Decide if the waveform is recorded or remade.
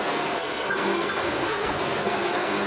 remade